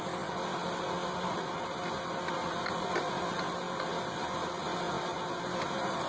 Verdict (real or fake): real